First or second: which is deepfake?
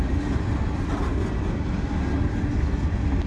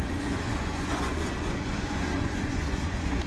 second